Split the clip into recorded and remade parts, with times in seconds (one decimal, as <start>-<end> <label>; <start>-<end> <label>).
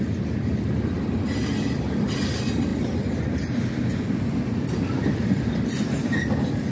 0.0-6.7 recorded